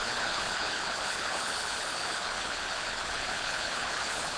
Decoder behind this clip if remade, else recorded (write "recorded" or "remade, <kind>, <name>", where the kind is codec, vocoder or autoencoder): remade, codec, HILCodec